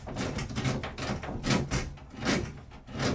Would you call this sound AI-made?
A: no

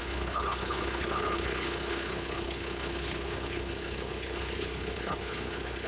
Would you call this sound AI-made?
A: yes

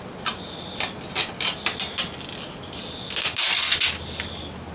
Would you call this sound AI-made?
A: no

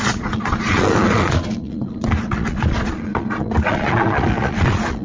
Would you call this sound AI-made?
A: yes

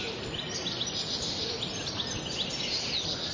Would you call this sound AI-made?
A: no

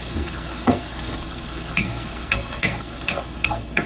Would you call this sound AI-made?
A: yes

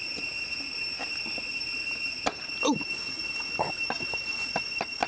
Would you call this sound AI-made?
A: no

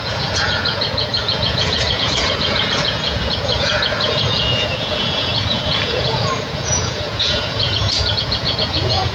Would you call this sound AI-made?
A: yes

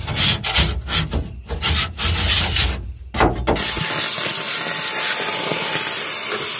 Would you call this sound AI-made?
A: no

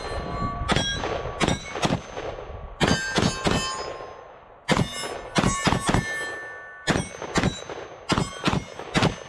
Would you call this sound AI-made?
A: no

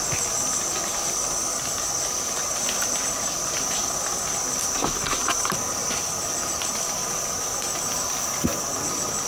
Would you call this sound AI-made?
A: no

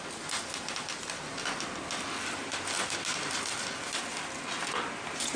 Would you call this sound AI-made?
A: no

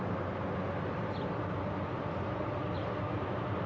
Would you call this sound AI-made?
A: no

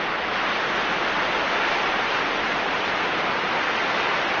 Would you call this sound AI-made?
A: no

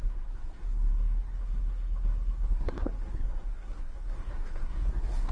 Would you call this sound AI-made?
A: yes